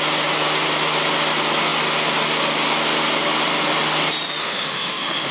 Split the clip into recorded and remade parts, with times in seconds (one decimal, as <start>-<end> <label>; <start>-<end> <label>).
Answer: 0.0-4.4 recorded; 4.4-5.3 remade